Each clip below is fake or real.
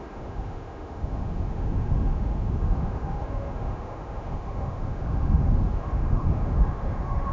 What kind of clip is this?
fake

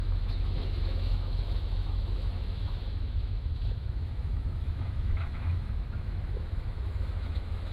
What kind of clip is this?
fake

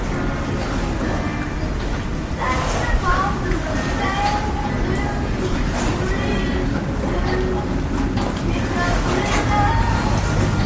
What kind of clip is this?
real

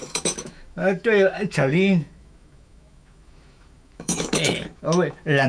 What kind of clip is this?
fake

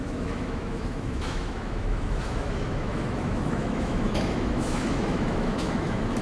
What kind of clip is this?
fake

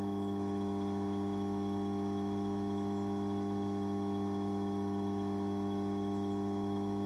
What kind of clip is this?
fake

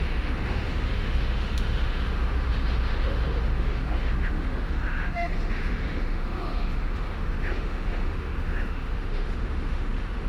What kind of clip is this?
fake